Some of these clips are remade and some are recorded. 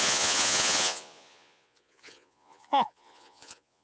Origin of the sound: remade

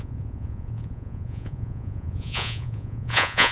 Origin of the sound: remade